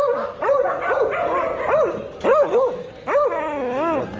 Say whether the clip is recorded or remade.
recorded